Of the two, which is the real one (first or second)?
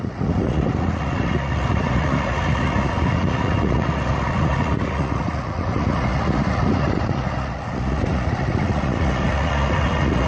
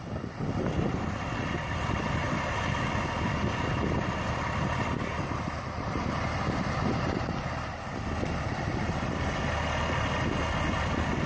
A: second